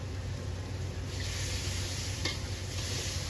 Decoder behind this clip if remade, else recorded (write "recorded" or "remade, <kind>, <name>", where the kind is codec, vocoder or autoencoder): recorded